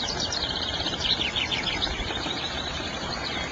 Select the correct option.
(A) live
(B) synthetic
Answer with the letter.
B